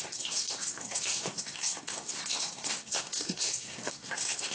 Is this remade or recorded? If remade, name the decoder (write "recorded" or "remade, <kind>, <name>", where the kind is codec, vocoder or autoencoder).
remade, codec, SNAC